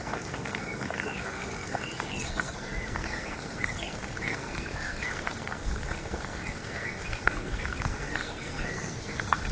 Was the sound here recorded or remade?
remade